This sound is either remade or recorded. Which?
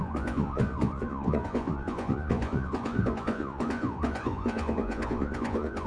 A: remade